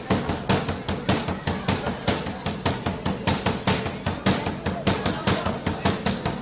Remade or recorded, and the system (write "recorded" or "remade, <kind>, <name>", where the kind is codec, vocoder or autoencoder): recorded